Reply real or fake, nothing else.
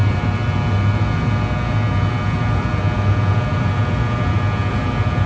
real